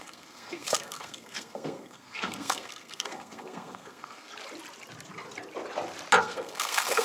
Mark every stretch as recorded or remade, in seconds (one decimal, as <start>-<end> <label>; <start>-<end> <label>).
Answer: 0.0-4.3 remade; 4.3-6.2 recorded; 6.2-7.0 remade